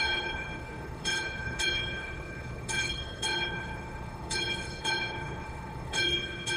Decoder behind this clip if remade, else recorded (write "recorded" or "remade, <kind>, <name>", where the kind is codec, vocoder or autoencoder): remade, codec, HILCodec